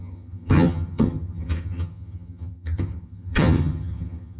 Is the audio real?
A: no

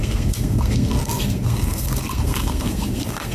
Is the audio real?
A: no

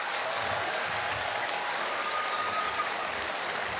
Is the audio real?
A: no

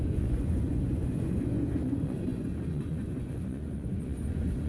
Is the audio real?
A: no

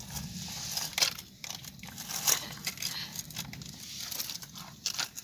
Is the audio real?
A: yes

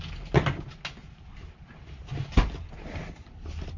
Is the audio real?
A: yes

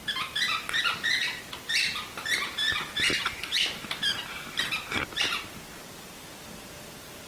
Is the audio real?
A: no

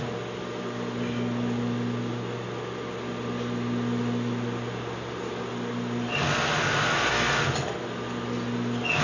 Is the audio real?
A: yes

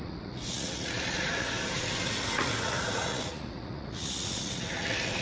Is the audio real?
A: no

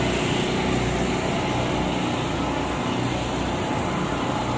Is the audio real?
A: yes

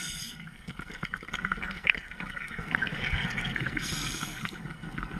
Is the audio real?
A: no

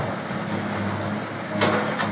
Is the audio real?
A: yes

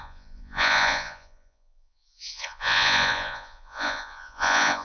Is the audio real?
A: no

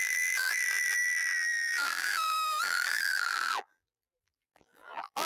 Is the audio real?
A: no